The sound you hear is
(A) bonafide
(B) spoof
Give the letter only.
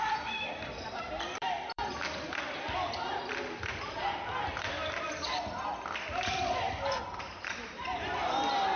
B